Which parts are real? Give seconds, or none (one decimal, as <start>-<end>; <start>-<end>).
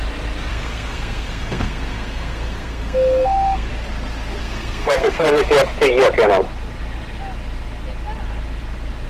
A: 0.0-0.5; 3.7-4.4; 5.4-9.1